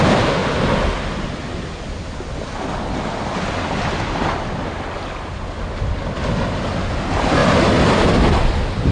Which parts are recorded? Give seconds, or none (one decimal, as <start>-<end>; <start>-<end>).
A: 0.0-8.9